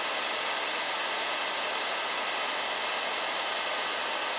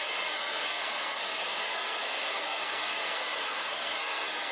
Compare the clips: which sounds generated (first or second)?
second